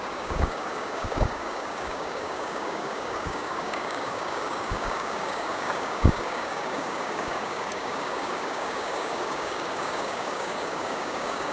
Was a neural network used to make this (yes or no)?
yes